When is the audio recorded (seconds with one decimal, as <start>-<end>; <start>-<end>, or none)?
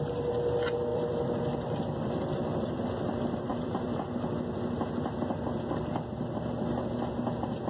0.0-0.9; 2.8-3.5; 4.1-7.7